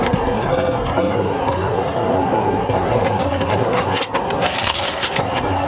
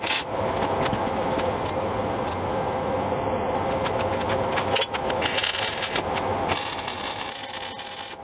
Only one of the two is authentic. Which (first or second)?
second